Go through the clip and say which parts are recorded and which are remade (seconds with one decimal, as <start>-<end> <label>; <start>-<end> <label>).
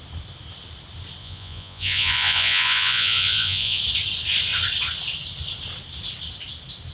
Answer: 0.0-1.2 recorded; 1.2-3.8 remade; 3.8-6.9 recorded